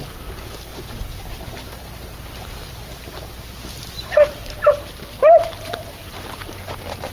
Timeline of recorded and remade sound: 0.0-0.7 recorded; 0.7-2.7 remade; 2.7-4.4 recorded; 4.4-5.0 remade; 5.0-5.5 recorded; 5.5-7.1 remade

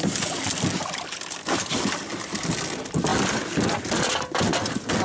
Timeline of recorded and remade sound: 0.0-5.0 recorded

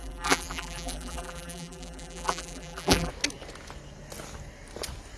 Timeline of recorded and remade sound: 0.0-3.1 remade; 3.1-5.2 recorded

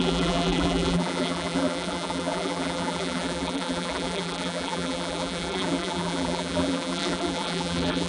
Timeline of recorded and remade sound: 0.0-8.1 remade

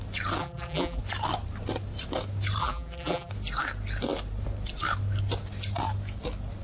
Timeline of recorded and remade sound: 0.0-0.4 recorded; 0.4-1.0 remade; 1.0-2.6 recorded; 2.6-3.3 remade; 3.3-6.6 recorded